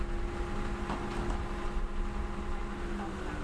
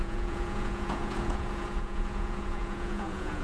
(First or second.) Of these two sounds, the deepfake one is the second